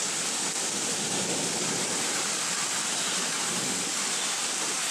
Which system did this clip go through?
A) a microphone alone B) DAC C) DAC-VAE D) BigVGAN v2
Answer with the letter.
A